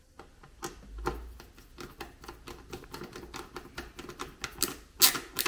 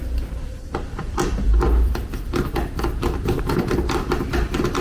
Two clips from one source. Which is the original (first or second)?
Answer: first